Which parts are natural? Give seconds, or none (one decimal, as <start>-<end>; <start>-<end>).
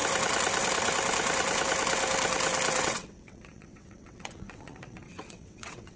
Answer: 0.0-2.8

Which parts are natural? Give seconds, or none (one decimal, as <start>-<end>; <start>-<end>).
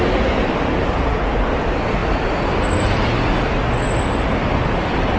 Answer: 0.0-5.2